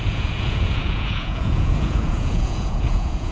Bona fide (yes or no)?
no